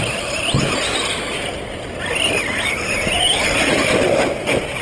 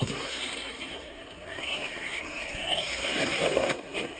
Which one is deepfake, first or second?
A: second